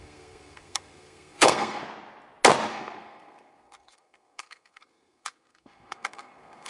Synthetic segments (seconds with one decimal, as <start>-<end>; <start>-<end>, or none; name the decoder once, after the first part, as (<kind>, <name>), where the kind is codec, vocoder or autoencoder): 0.0-1.8 (codec, SNAC); 2.7-6.7